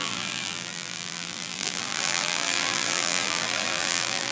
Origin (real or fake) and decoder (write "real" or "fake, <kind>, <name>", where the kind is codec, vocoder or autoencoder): fake, vocoder, BigVGAN v2